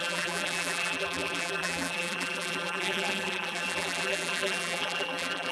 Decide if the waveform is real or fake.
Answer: fake